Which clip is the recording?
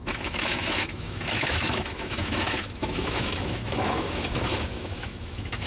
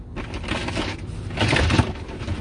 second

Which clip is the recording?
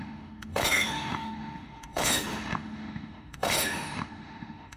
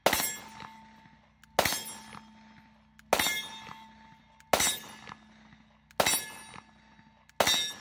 second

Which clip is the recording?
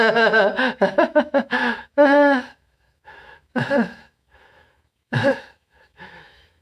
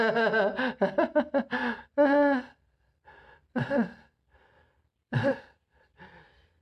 second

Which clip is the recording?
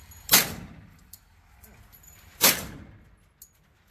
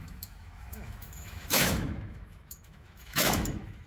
first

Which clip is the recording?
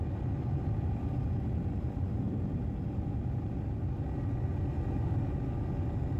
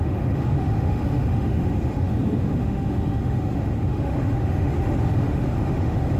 first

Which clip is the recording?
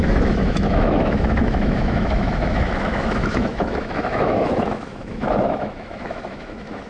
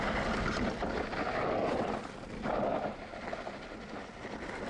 second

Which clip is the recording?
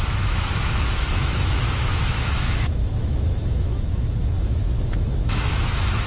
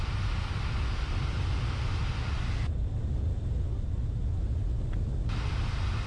second